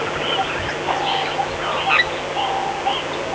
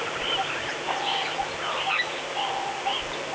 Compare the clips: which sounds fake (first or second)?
second